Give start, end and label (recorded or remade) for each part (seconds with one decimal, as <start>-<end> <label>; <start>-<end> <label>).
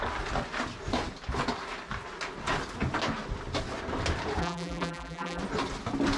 0.0-4.4 recorded; 4.4-5.4 remade; 5.4-6.2 recorded